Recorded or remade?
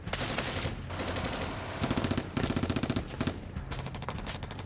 recorded